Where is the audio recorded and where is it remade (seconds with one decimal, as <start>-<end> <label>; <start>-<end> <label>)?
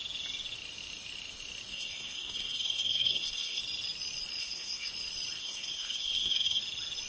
0.0-1.7 recorded; 1.7-3.6 remade; 3.6-4.4 recorded; 4.4-4.9 remade; 4.9-5.4 recorded; 5.4-6.6 remade; 6.6-7.1 recorded